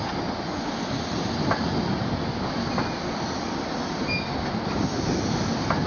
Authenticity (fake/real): real